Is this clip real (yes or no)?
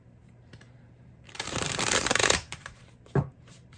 no